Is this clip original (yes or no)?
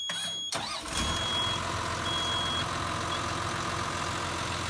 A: yes